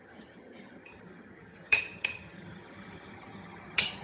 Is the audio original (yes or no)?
no